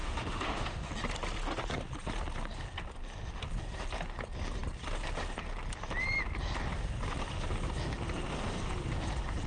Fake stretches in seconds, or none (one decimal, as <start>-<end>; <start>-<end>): 0.0-0.9